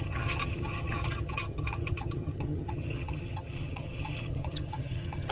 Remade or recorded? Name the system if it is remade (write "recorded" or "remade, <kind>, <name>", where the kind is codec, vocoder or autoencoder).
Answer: remade, vocoder, HiFi-GAN